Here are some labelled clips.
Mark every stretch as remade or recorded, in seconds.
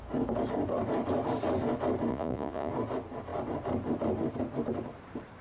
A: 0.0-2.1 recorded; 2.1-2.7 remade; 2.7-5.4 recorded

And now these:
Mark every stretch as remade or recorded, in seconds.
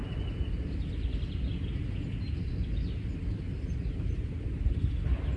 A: 0.0-5.4 recorded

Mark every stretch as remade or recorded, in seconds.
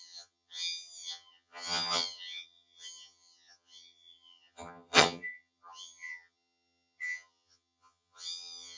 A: 0.0-8.8 remade